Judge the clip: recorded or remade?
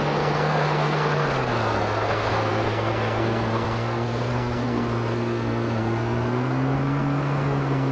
remade